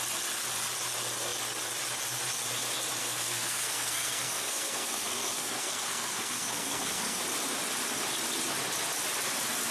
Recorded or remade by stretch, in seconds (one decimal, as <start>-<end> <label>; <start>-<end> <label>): 0.0-3.0 recorded; 3.0-7.2 remade; 7.2-9.7 recorded